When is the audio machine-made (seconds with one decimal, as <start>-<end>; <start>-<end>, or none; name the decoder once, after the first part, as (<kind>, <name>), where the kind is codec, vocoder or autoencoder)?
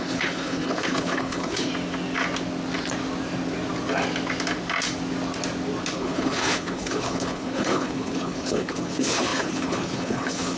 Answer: 0.0-1.7 (codec, HILCodec); 5.9-10.6